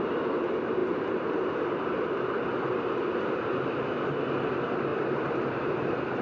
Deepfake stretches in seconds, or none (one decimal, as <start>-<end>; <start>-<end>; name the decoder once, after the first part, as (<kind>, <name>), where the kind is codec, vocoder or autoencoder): none